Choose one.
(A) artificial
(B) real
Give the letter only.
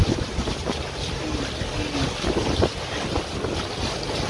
B